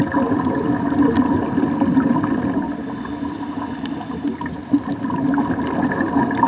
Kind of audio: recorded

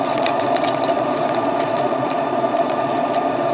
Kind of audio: remade